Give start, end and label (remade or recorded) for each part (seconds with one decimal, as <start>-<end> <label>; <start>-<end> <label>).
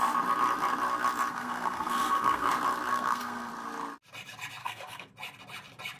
0.0-1.3 recorded; 1.3-2.5 remade; 2.5-2.9 recorded; 2.9-3.5 remade; 3.5-4.6 recorded; 4.6-5.1 remade; 5.1-6.0 recorded